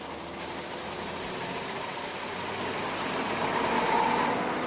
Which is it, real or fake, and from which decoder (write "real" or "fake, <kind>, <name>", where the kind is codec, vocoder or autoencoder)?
real